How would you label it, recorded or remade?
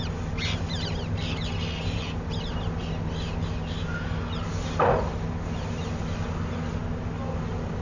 recorded